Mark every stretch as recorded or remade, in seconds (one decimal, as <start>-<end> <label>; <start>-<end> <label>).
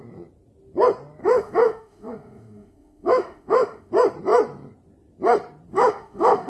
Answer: 0.0-1.2 recorded; 1.2-3.9 remade; 3.9-5.7 recorded; 5.7-6.5 remade